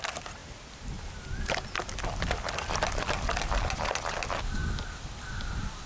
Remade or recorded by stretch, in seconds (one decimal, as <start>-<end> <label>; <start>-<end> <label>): 0.0-5.9 recorded